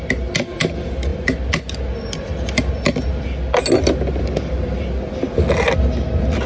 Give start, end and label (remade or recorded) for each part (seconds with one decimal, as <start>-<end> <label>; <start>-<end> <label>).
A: 0.0-6.5 recorded